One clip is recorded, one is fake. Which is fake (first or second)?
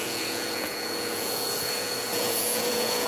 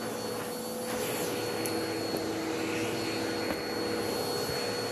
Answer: first